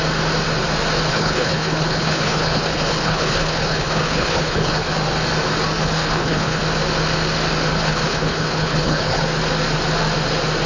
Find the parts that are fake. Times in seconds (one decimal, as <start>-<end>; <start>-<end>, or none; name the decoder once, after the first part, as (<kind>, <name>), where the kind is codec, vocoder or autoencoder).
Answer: 1.1-4.9 (codec, HILCodec); 5.8-6.6; 7.7-9.2